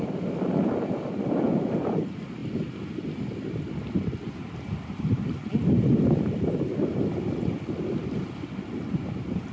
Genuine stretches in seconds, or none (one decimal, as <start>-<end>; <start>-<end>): 0.0-9.5